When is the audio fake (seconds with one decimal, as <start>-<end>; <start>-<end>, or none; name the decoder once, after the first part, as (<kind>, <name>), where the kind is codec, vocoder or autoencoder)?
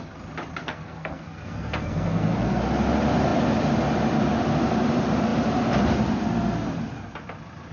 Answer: 0.6-2.6 (codec, SNAC)